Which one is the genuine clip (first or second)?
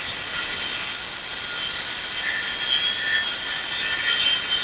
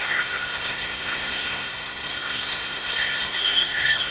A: first